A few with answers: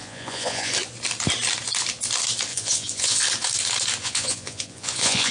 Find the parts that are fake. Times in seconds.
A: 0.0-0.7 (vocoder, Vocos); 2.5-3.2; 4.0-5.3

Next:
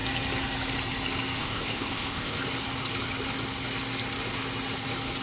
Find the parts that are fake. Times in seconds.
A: 1.4-2.4 (codec, ZipCodec)

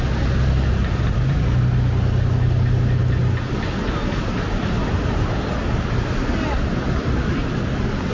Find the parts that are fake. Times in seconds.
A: none

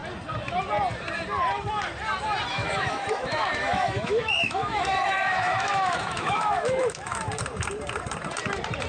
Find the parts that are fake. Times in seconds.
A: 2.5-7.3 (autoencoder, DAC-VAE)